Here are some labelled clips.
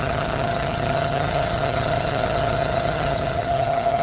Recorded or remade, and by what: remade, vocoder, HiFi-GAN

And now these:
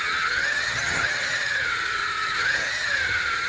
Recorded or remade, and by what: remade, vocoder, HiFi-GAN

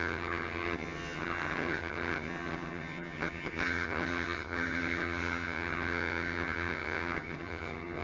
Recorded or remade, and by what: remade, vocoder, HiFi-GAN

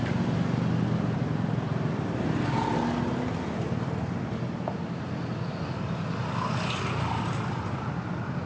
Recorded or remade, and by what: recorded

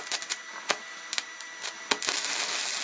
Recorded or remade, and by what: recorded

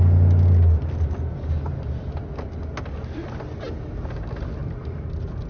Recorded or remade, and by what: recorded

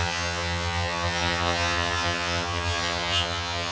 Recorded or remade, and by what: remade, vocoder, HiFi-GAN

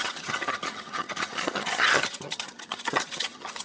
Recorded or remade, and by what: remade, vocoder, HiFi-GAN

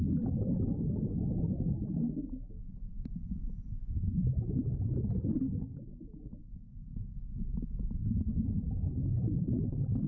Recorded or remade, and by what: recorded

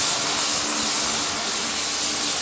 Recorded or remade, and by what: recorded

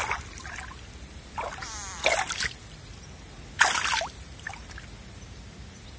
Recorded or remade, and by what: recorded